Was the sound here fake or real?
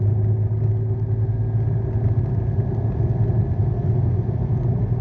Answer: real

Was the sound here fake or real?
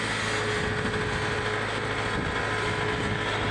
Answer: real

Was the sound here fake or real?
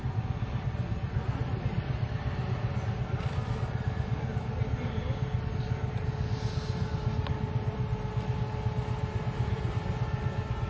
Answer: real